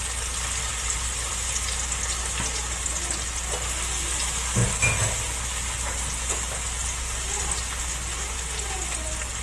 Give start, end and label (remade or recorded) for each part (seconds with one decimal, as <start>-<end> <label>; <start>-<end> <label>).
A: 0.0-9.4 recorded